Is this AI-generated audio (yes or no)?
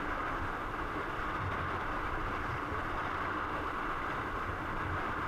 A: no